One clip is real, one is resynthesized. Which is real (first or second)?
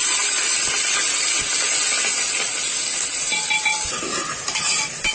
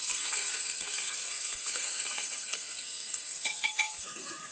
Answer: first